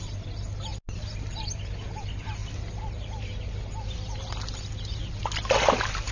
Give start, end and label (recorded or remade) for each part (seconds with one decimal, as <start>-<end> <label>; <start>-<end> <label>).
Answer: 0.0-6.1 recorded